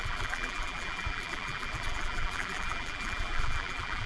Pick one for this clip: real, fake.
fake